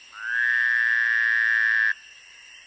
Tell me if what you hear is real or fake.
real